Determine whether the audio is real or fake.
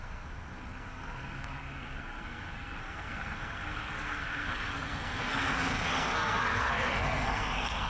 fake